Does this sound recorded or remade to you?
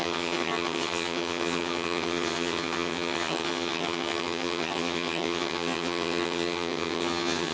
remade